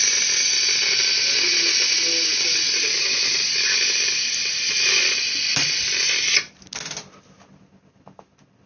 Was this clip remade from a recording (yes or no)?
no